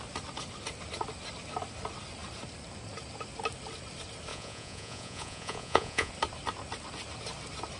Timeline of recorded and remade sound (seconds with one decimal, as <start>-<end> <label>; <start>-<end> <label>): 0.0-4.3 recorded; 4.3-6.1 remade; 6.1-7.8 recorded